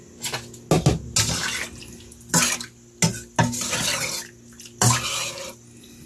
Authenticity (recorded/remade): recorded